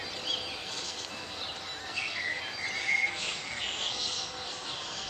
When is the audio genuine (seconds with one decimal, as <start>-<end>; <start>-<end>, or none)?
0.0-0.6; 1.4-1.8; 2.4-2.8